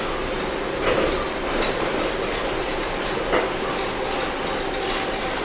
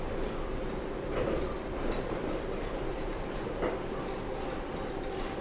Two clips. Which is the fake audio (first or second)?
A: second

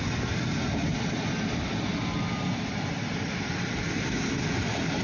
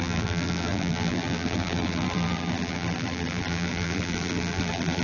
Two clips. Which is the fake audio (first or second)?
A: second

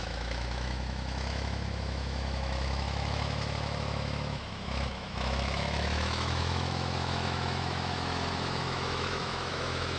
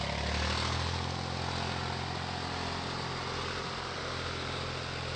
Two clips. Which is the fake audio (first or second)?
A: first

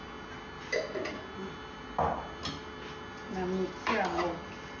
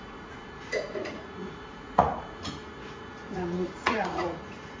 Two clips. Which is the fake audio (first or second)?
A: second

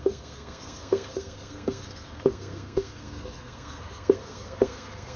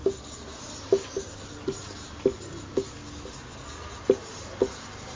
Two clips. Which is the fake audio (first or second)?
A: first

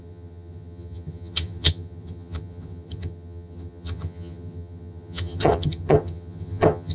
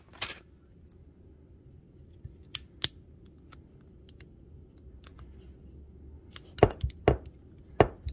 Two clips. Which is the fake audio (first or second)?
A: first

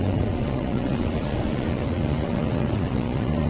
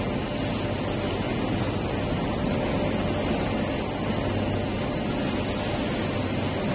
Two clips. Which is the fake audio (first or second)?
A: first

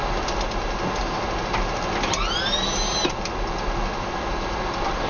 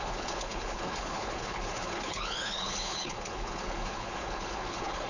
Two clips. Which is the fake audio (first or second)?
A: second